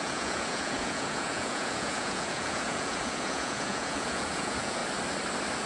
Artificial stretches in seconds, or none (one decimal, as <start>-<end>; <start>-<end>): 0.0-4.8